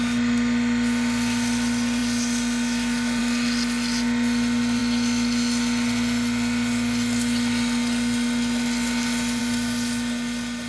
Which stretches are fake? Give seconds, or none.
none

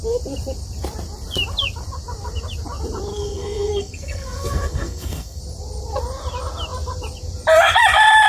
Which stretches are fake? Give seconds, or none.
3.1-5.4 (codec, SNAC)

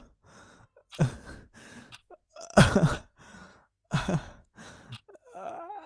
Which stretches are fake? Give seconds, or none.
2.0-2.6 (autoencoder, DAC-VAE); 3.5-4.7

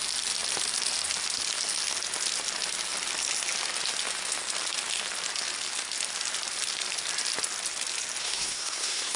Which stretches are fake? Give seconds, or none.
8.2-9.2 (codec, SNAC)

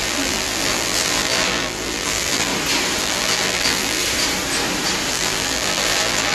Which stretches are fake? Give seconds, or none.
0.0-2.5 (vocoder, BigVGAN v2); 3.0-4.0; 5.1-6.3

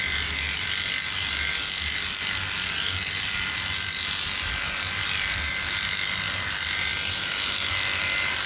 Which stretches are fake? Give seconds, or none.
none

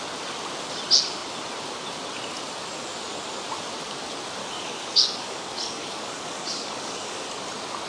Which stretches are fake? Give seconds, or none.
4.4-7.5 (codec, DAC)

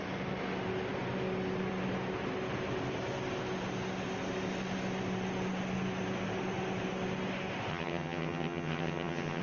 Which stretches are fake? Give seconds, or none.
7.7-9.4 (vocoder, HiFi-GAN)